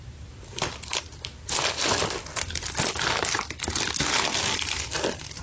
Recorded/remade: remade